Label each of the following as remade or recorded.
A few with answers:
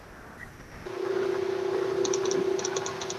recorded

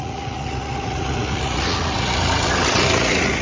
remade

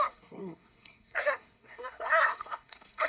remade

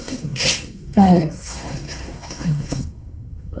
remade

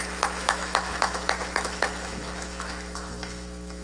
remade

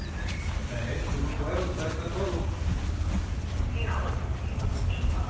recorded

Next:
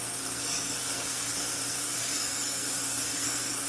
remade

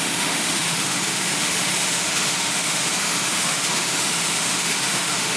remade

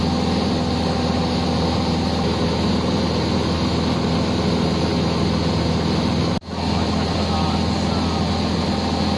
recorded